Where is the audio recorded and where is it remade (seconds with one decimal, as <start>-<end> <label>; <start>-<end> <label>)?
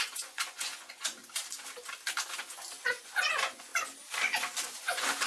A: 0.0-1.2 remade; 1.2-2.8 recorded; 2.8-3.7 remade; 3.7-4.6 recorded; 4.6-5.3 remade